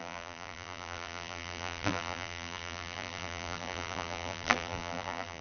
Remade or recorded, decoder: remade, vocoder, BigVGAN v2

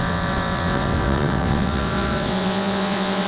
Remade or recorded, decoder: remade, vocoder, WaveNeXt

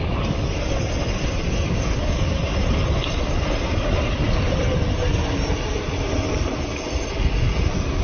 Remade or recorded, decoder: recorded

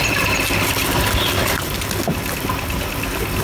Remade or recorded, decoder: recorded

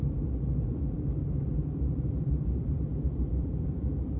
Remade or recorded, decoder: remade, vocoder, BigVGAN v2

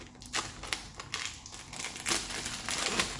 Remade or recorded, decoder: recorded